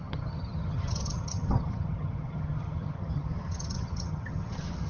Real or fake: fake